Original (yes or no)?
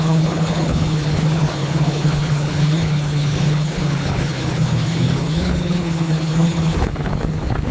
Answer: no